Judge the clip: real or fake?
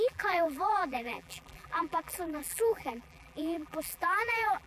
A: fake